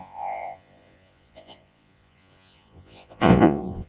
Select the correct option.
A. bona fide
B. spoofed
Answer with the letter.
B